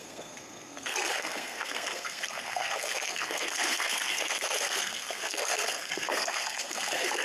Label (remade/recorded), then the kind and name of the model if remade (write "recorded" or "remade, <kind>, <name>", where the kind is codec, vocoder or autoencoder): remade, codec, SNAC